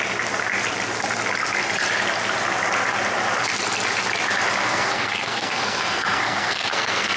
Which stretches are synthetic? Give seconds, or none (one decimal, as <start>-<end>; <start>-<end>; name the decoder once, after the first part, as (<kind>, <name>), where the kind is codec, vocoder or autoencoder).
4.6-7.2 (codec, SNAC)